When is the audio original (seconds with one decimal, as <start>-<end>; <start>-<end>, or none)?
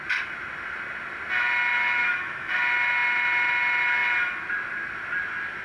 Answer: 0.0-2.0; 2.6-5.6